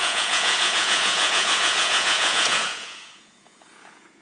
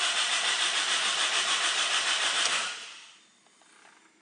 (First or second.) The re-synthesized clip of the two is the first